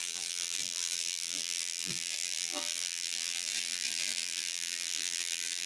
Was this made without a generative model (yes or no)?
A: no